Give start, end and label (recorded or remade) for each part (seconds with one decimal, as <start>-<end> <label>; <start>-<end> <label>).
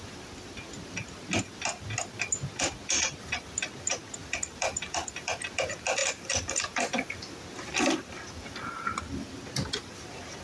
0.0-4.2 recorded; 4.2-5.5 remade; 5.5-6.0 recorded; 6.0-8.5 remade; 8.5-10.4 recorded